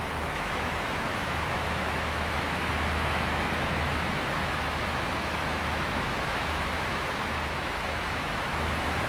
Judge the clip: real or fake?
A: fake